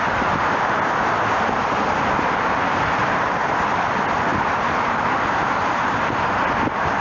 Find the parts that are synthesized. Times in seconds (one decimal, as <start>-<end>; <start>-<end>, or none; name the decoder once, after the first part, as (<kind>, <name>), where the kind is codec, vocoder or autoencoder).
3.0-3.7 (vocoder, BigVGAN v2); 4.3-6.4